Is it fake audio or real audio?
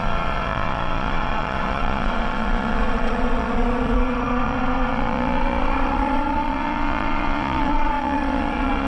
fake